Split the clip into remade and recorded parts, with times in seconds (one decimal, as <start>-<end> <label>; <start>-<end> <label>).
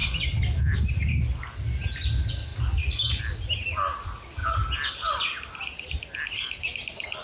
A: 0.0-4.4 recorded; 4.4-5.1 remade; 5.1-7.2 recorded